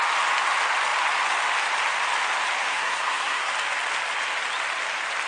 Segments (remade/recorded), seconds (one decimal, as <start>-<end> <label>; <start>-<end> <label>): 0.0-2.6 recorded; 2.6-3.5 remade; 3.5-5.3 recorded